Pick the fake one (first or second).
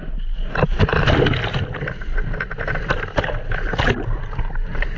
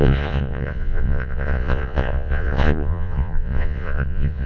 second